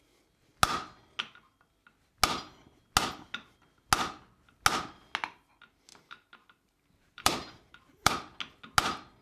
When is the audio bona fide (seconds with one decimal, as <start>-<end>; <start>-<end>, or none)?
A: 0.0-5.9; 8.1-9.2